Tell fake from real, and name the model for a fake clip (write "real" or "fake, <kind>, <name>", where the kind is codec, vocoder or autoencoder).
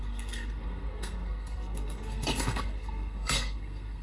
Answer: fake, codec, SNAC